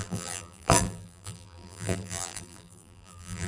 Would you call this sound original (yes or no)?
no